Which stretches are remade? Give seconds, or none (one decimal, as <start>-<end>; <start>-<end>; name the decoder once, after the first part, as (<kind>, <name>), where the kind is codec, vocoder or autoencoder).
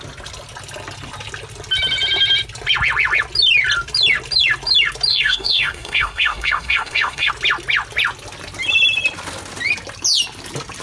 5.1-7.3 (codec, SNAC)